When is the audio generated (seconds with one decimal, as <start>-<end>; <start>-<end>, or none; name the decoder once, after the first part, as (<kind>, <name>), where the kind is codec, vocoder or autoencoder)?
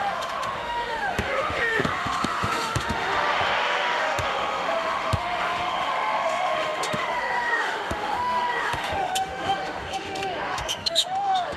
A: 0.0-11.6 (autoencoder, DAC-VAE)